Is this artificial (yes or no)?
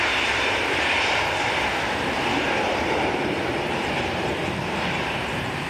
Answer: yes